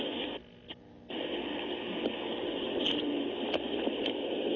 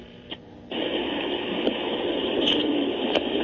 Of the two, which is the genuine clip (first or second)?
first